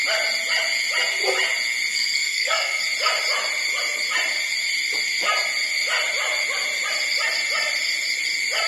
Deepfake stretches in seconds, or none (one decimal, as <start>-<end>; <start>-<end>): 1.9-2.8